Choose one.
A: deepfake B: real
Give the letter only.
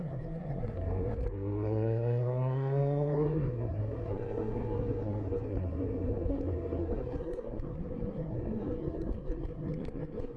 A